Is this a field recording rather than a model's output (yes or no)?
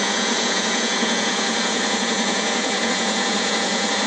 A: no